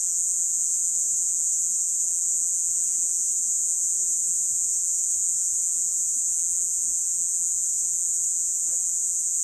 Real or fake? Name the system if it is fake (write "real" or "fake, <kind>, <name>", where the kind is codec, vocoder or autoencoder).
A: fake, vocoder, BigVGAN v2